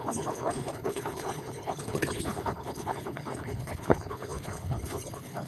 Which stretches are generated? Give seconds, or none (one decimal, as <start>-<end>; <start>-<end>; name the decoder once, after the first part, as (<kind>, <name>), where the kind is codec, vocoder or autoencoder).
0.0-5.5 (codec, HILCodec)